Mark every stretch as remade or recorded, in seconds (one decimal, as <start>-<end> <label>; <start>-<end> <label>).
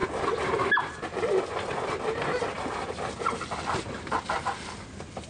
0.0-5.3 recorded